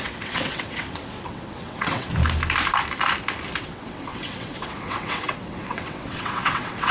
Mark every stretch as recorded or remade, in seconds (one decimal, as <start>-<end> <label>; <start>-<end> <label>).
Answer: 0.0-2.1 remade; 2.1-3.6 recorded; 3.6-6.9 remade